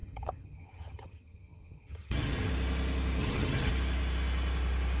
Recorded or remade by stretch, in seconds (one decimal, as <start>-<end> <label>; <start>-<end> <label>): 0.0-2.5 remade; 2.5-3.2 recorded; 3.2-3.7 remade; 3.7-5.0 recorded